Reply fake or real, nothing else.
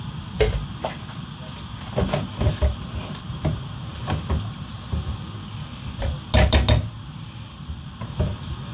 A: real